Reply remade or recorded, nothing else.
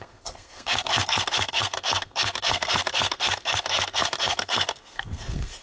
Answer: remade